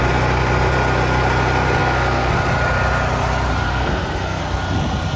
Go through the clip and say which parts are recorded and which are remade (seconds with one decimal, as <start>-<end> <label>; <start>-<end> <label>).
0.0-1.8 recorded; 1.8-2.3 remade; 2.3-3.7 recorded; 3.7-4.4 remade; 4.4-5.2 recorded